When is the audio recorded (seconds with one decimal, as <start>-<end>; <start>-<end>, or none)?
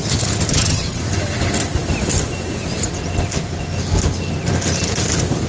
0.0-0.5; 1.0-5.5